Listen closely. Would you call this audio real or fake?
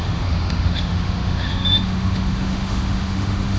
fake